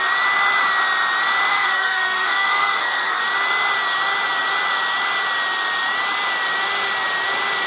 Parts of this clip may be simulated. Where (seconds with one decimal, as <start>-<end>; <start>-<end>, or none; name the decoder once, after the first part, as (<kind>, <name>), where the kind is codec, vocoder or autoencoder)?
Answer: 1.5-3.2 (codec, SNAC)